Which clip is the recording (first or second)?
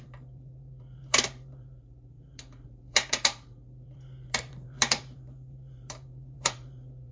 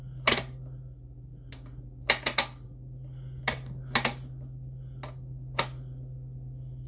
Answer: second